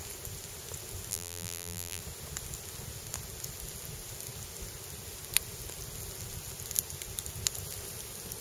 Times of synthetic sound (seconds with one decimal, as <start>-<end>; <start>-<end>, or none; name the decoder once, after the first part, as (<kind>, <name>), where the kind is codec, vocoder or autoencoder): 1.1-2.0 (vocoder, BigVGAN v2)